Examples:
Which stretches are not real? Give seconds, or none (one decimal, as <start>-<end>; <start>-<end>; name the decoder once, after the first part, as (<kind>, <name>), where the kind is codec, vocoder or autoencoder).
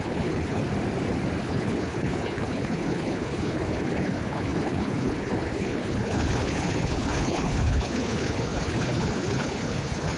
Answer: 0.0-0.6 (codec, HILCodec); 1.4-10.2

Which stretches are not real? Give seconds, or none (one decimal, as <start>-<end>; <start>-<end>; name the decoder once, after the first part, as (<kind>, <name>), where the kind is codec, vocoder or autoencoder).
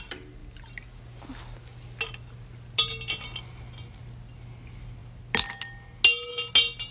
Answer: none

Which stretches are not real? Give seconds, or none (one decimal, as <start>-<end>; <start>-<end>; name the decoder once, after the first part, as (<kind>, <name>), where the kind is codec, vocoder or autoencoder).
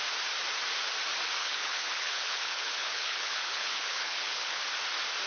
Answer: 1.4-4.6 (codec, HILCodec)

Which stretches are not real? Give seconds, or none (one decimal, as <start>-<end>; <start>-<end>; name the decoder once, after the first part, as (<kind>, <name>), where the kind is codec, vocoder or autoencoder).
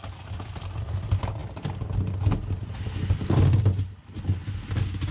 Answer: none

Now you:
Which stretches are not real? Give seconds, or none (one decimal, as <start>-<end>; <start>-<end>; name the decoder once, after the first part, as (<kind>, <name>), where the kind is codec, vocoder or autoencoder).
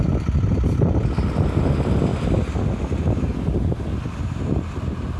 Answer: none